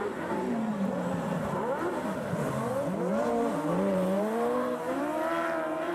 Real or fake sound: fake